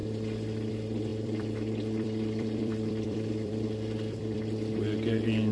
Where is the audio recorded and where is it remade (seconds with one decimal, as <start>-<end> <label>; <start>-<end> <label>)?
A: 0.0-1.1 recorded; 1.1-4.4 remade; 4.4-5.5 recorded

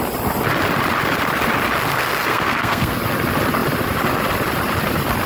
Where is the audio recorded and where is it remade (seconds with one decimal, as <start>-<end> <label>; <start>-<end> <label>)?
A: 0.0-2.3 recorded; 2.3-3.0 remade; 3.0-5.3 recorded

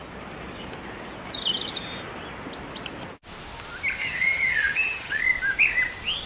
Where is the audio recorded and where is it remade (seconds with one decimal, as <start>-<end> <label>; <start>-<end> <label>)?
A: 0.0-4.0 recorded; 4.0-5.2 remade; 5.2-6.3 recorded

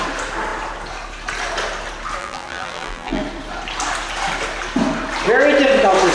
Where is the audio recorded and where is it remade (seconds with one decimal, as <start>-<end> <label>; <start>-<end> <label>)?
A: 0.0-2.2 recorded; 2.2-3.2 remade; 3.2-6.1 recorded

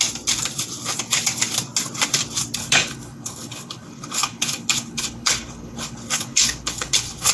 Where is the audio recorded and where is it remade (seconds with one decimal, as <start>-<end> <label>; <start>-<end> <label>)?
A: 0.0-2.6 recorded; 2.6-7.3 remade

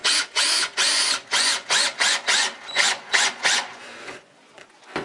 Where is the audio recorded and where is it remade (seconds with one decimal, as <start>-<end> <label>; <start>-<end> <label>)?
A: 0.0-5.0 remade

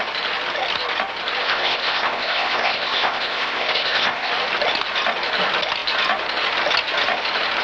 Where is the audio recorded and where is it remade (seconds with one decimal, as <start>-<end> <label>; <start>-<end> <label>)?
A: 0.0-1.4 recorded; 1.4-4.3 remade; 4.3-7.6 recorded